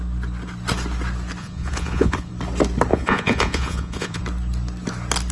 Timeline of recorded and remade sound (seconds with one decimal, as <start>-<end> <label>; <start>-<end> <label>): 0.0-1.4 recorded; 1.4-2.3 remade; 2.3-2.9 recorded; 2.9-4.2 remade; 4.2-5.3 recorded